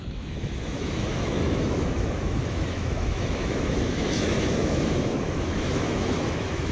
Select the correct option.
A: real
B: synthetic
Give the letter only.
B